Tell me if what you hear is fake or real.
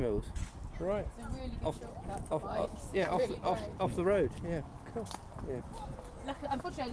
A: real